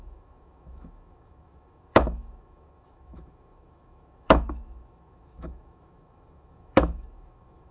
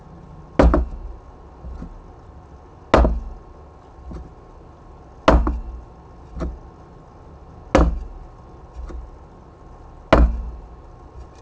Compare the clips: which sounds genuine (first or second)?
second